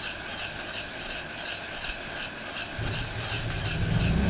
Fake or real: real